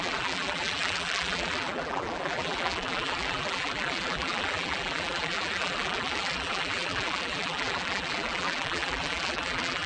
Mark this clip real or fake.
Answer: fake